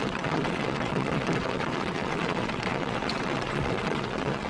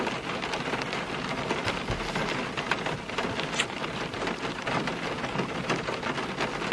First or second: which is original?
second